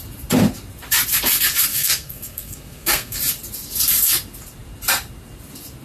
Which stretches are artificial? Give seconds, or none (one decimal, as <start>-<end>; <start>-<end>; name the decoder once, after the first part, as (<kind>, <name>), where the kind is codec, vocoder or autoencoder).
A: 1.7-3.2 (codec, SNAC)